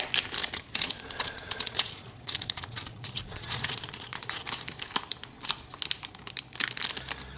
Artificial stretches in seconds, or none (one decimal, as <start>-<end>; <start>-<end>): 0.4-4.4